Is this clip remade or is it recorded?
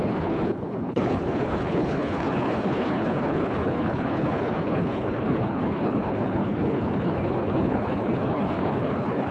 remade